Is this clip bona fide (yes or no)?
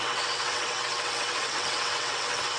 no